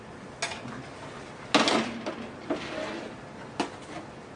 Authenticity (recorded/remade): recorded